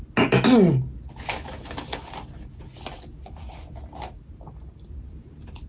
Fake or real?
real